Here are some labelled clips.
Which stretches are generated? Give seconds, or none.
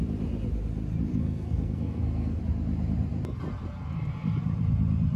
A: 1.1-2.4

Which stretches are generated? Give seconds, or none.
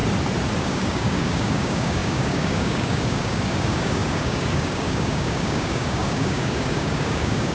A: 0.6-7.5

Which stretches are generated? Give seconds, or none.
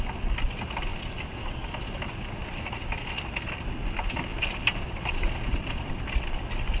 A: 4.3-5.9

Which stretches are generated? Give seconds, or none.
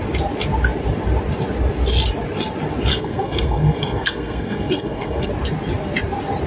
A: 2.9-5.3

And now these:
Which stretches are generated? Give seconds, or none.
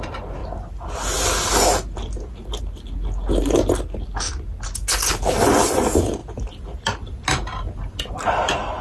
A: none